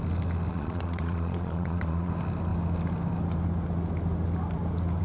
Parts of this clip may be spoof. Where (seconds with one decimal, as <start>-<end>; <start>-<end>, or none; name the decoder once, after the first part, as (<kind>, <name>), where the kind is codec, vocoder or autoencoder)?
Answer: 0.5-2.1 (vocoder, Vocos)